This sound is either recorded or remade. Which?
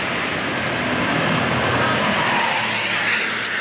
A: recorded